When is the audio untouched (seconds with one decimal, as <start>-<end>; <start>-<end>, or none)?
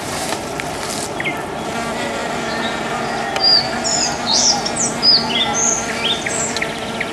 0.0-7.1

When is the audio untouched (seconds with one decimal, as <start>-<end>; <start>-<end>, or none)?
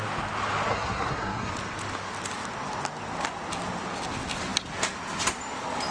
0.0-0.7; 1.5-5.9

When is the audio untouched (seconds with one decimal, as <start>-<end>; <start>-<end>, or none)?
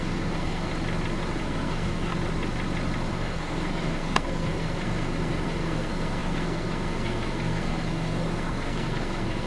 0.7-1.4; 2.1-3.1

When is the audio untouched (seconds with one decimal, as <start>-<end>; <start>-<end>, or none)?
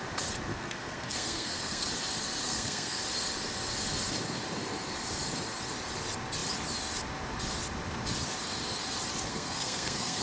0.0-0.5; 1.9-2.4; 3.0-9.3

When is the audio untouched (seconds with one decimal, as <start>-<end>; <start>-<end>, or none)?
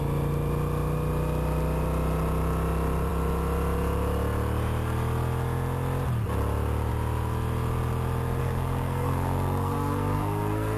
0.0-8.4